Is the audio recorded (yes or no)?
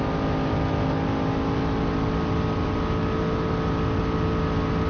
yes